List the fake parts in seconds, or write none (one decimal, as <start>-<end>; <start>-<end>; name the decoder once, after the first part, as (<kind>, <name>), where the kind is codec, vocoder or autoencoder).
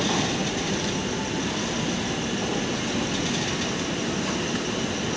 0.4-1.4 (vocoder, BigVGAN v2)